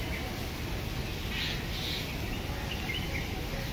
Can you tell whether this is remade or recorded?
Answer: recorded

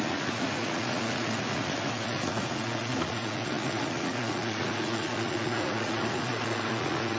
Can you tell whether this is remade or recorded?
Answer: remade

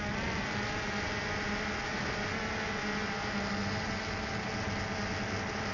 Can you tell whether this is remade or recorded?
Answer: recorded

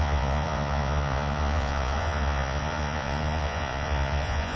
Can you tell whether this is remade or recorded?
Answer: remade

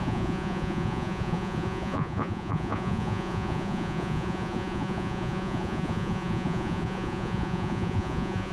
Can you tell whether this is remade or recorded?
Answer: remade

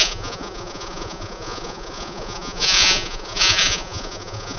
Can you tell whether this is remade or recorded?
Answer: remade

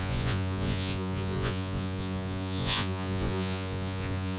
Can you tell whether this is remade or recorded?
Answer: remade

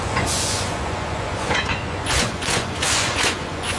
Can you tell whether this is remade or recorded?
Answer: remade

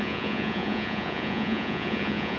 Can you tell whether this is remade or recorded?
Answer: remade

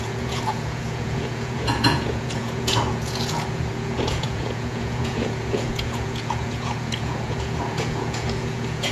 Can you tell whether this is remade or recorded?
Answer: remade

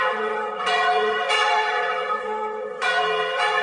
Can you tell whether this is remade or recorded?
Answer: remade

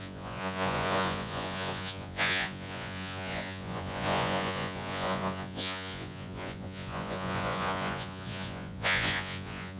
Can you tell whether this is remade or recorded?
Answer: remade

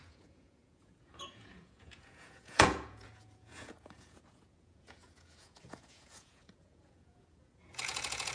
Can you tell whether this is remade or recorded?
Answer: remade